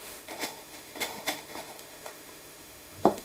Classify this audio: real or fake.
fake